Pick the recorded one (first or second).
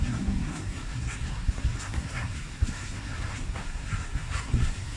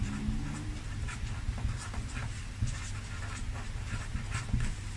second